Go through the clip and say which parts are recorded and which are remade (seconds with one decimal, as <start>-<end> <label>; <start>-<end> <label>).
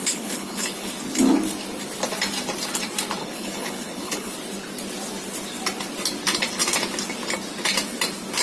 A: 0.0-0.9 remade; 0.9-3.2 recorded; 3.2-4.3 remade; 4.3-8.4 recorded